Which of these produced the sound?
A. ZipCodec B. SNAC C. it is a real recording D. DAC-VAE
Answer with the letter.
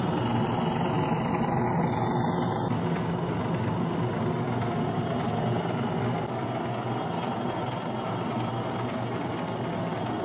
C